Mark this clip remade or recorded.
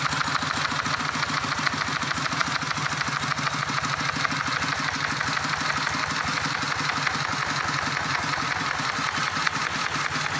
recorded